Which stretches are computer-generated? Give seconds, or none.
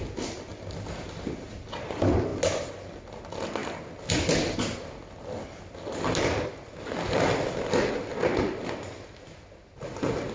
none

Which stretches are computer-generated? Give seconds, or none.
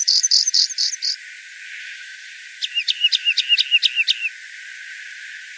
0.0-0.9; 1.8-2.3; 2.8-3.4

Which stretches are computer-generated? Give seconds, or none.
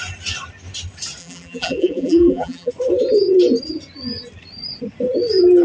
1.2-2.7